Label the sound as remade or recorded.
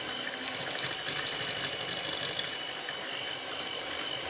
recorded